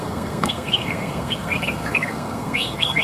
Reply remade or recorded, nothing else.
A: remade